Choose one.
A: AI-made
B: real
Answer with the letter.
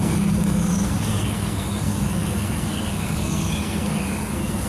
A